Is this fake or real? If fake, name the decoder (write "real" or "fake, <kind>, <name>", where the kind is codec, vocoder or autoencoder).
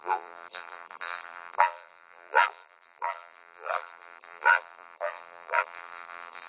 fake, vocoder, BigVGAN v2